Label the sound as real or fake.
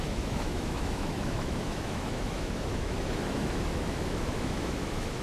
fake